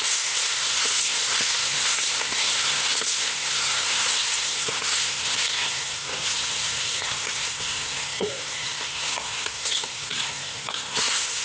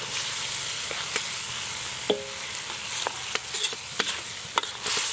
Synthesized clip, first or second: first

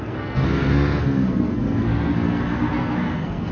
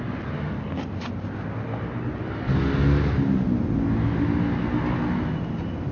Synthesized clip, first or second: first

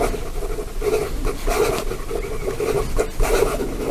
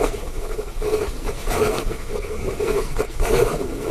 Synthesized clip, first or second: second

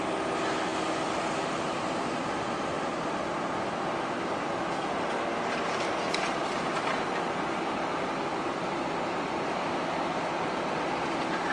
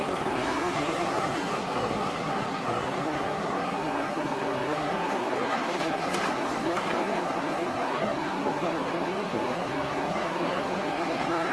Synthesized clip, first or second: second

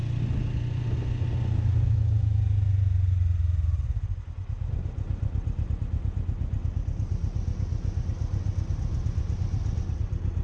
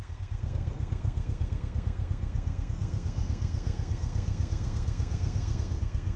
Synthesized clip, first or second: second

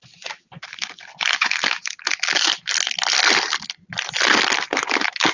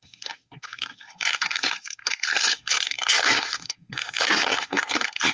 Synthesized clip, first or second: second